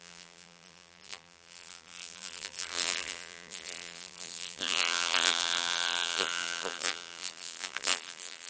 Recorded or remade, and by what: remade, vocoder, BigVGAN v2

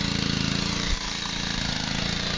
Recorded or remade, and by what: remade, vocoder, BigVGAN v2